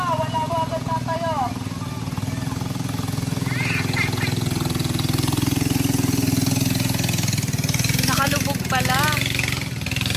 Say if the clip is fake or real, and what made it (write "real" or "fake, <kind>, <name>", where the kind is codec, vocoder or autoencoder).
real